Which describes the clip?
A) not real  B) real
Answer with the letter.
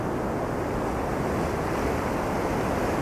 B